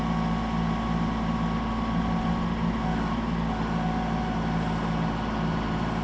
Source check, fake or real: real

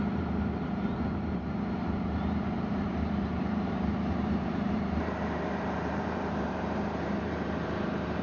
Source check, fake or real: fake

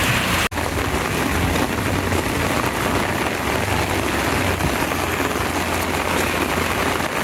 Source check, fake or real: real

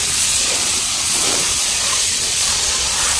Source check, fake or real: fake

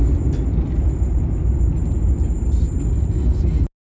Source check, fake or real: real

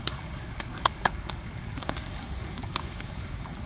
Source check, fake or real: fake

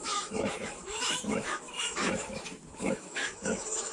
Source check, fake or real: fake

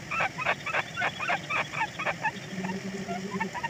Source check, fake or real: real